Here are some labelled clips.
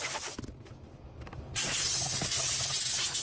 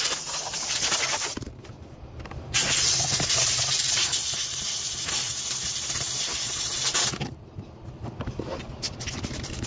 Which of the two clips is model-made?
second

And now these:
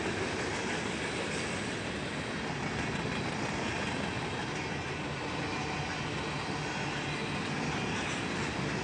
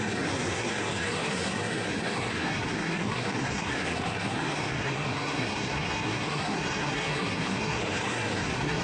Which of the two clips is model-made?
second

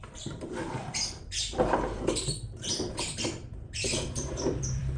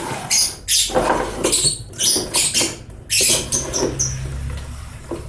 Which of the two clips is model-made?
first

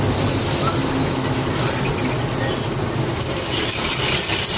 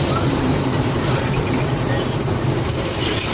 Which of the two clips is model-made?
second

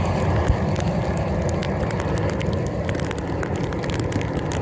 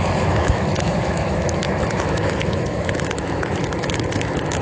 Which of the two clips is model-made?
second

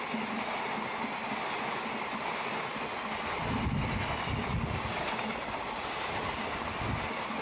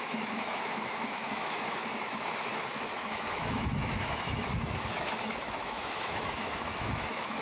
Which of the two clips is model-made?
second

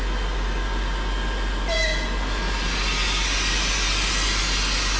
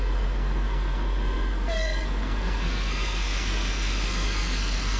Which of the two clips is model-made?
second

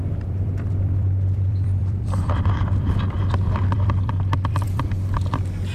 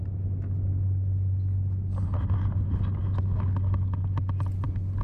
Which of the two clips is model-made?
first